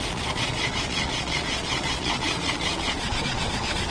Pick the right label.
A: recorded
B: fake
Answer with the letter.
B